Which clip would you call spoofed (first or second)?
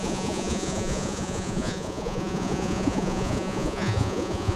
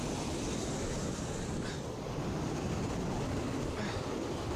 first